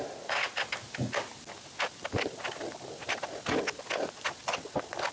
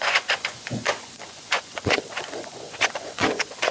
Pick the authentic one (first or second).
first